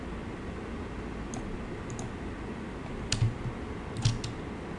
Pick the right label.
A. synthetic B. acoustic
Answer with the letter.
B